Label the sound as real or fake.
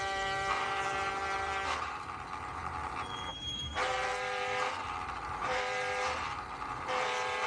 fake